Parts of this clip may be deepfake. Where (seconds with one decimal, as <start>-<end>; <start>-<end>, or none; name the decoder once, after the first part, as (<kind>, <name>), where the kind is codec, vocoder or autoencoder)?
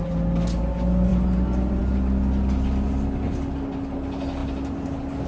none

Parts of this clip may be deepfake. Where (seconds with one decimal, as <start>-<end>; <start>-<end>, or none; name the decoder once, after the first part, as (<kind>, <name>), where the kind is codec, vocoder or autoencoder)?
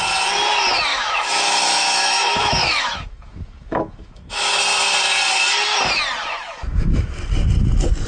0.9-4.6 (autoencoder, DAC-VAE); 6.2-7.2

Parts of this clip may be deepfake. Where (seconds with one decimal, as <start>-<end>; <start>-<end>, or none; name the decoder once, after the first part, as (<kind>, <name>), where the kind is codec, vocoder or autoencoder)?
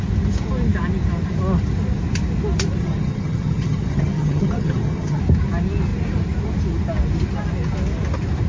2.8-5.2 (vocoder, HiFi-GAN)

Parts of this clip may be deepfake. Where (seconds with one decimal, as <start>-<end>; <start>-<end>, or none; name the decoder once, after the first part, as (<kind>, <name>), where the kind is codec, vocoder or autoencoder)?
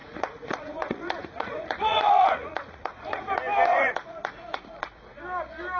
0.0-3.3 (vocoder, Vocos); 3.7-5.2